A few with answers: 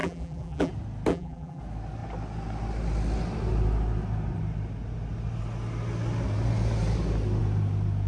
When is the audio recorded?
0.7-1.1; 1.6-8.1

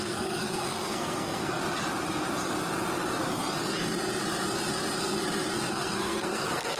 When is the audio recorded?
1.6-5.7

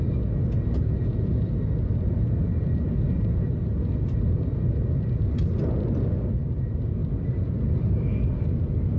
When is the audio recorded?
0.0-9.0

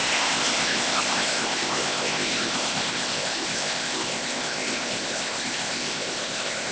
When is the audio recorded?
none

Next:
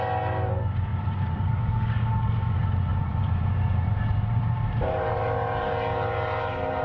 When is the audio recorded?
0.0-0.9; 1.6-2.9; 5.2-6.8

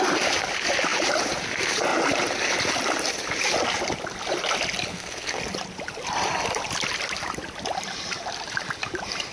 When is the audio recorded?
0.0-4.9; 5.4-9.3

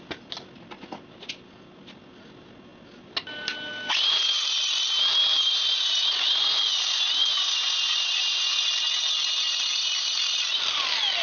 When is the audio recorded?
0.0-6.0; 8.7-11.2